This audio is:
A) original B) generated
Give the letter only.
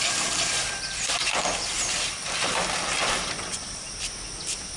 A